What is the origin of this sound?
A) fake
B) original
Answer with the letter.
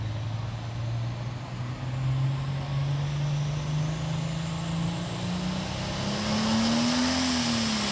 B